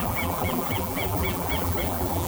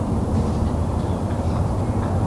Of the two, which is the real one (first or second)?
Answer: second